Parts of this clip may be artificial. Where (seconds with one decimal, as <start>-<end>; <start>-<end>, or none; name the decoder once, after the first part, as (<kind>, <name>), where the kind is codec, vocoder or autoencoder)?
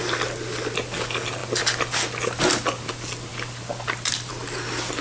none